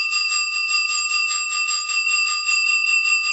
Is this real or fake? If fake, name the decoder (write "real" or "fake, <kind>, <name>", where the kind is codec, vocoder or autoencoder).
fake, vocoder, BigVGAN v2